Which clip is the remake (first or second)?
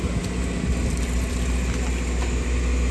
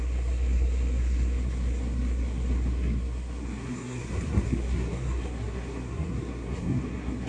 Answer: second